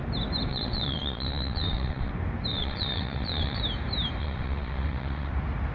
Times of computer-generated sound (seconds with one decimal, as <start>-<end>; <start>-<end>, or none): 0.5-2.1; 2.5-3.6; 4.2-5.3